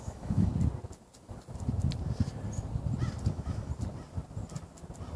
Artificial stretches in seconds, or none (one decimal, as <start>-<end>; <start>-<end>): 0.0-0.5; 3.3-3.7